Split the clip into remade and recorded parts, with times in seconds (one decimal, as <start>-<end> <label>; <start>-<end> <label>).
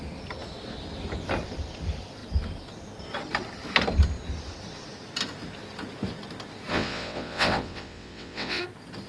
0.0-6.7 recorded; 6.7-8.6 remade; 8.6-9.1 recorded